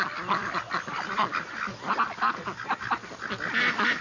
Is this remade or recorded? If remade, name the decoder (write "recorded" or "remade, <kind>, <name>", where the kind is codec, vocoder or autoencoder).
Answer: recorded